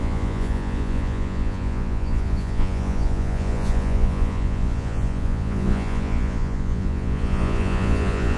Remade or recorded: remade